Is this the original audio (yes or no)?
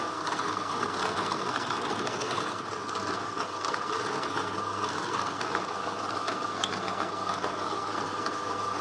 no